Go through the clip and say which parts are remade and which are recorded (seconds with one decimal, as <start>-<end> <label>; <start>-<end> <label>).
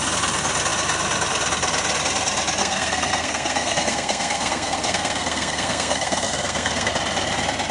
0.0-2.6 recorded; 2.6-6.9 remade; 6.9-7.7 recorded